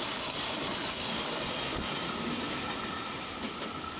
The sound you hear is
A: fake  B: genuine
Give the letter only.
B